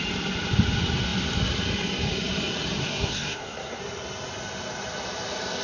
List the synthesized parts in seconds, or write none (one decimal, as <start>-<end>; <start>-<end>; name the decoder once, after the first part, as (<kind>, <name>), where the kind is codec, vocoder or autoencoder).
2.8-3.8 (codec, SNAC)

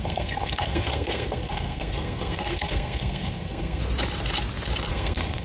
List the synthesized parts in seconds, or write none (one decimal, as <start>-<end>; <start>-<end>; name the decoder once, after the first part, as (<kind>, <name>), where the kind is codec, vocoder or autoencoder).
0.0-3.8 (codec, SNAC); 4.9-5.4

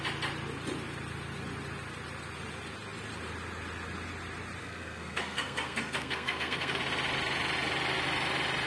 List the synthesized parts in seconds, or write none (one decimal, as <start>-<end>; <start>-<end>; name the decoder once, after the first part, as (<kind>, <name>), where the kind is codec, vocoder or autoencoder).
4.6-6.8 (codec, SNAC)

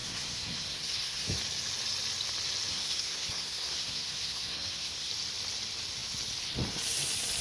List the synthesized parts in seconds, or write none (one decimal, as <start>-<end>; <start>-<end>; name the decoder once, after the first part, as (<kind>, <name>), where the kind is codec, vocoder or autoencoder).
0.0-1.4 (codec, SNAC); 2.7-5.1

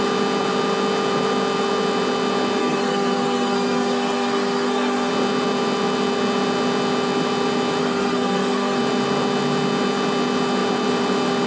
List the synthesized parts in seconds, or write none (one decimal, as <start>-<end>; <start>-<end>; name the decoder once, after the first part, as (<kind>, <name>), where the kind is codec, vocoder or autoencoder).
2.6-5.1 (codec, SNAC); 7.8-8.8

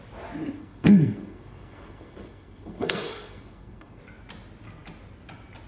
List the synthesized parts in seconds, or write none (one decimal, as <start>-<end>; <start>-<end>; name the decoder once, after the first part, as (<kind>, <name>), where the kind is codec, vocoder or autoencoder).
0.6-4.0 (codec, SNAC)

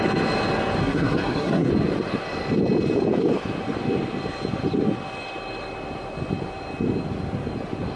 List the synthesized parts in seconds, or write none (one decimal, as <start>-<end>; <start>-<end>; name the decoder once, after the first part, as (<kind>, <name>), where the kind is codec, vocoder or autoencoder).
0.8-1.7 (codec, SNAC)

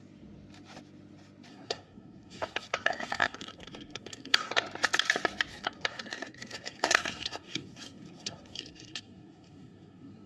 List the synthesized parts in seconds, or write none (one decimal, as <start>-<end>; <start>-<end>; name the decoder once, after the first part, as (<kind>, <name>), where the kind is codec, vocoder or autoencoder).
1.5-4.6 (codec, SNAC); 5.5-10.3